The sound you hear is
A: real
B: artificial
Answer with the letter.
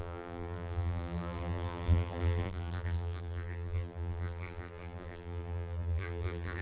B